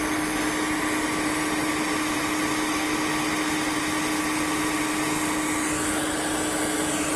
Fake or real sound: real